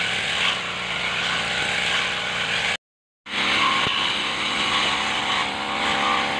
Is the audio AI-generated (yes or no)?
no